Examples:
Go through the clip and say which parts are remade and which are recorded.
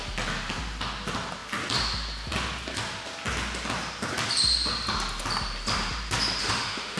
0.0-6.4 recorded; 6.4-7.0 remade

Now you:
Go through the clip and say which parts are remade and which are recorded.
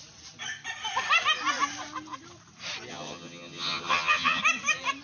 0.0-2.9 recorded; 2.9-4.4 remade; 4.4-5.0 recorded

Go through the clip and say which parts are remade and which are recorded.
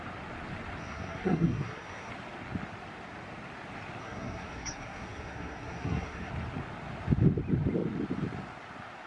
0.0-0.8 recorded; 0.8-2.1 remade; 2.1-4.0 recorded; 4.0-6.3 remade; 6.3-9.1 recorded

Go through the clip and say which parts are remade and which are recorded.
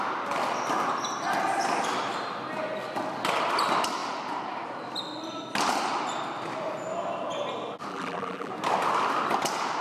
0.0-7.9 recorded; 7.9-8.5 remade; 8.5-9.8 recorded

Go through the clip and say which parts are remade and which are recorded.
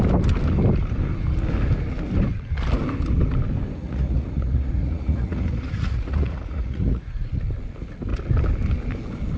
0.0-3.8 recorded; 3.8-7.3 remade; 7.3-9.4 recorded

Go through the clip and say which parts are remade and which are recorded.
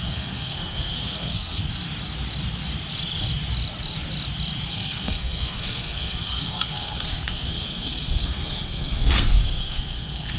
0.0-1.6 remade; 1.6-4.7 recorded; 4.7-10.4 remade